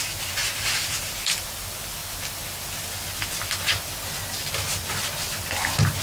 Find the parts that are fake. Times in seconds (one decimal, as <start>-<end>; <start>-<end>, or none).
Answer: 0.4-1.2